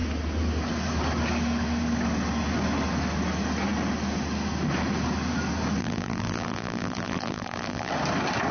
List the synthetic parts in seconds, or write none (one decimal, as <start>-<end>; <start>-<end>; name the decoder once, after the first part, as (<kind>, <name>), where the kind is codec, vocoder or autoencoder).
5.8-7.9 (vocoder, BigVGAN v2)